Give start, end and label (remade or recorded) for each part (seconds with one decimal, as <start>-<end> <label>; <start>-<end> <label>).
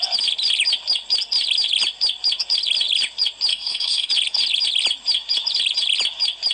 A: 0.0-3.5 recorded; 3.5-4.1 remade; 4.1-6.5 recorded